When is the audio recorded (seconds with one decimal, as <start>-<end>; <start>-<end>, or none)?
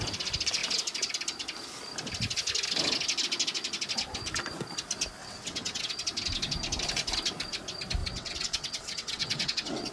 0.0-5.2; 5.9-8.0